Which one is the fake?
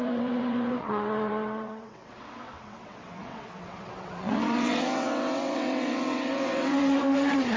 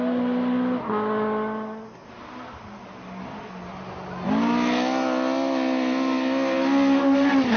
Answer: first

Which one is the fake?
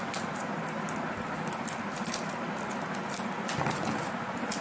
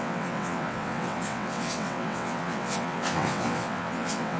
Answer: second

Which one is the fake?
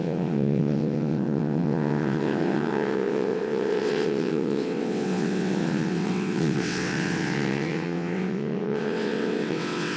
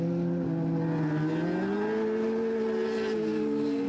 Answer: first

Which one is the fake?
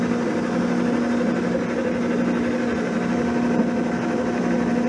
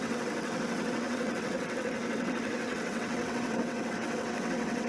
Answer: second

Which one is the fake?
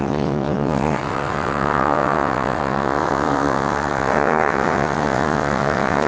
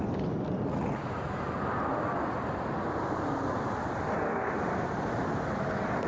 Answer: first